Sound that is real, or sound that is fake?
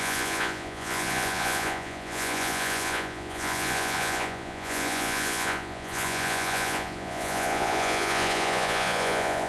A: fake